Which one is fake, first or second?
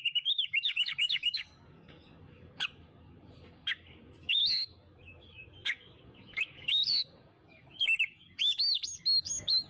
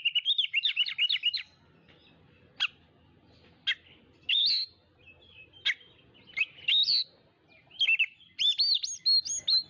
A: first